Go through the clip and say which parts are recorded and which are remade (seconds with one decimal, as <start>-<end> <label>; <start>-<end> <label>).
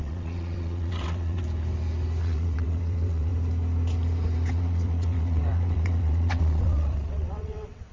0.0-1.4 remade; 1.4-2.2 recorded; 2.2-3.3 remade; 3.3-4.5 recorded; 4.5-7.9 remade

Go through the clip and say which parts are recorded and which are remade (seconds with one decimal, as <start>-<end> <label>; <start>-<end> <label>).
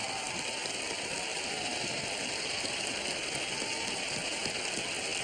0.0-5.2 recorded